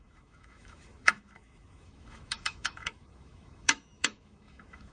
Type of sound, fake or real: fake